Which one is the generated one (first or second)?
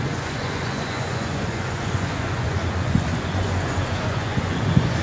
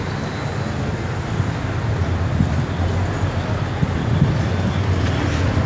first